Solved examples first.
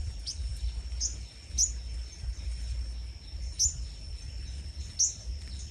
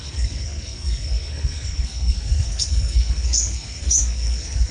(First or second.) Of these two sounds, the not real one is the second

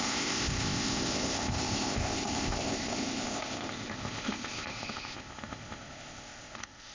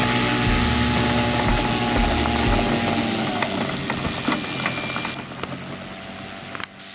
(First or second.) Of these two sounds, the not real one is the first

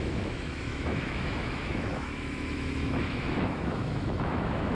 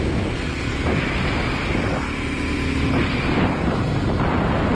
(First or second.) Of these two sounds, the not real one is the first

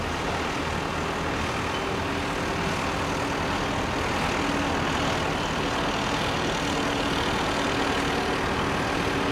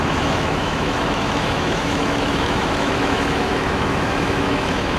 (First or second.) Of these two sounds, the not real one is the second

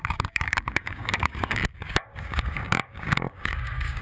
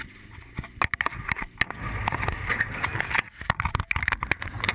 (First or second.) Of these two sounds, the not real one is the first